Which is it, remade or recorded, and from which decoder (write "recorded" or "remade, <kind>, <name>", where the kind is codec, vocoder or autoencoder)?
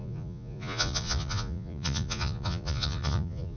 remade, vocoder, Vocos